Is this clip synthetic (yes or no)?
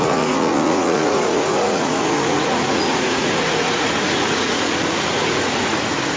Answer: yes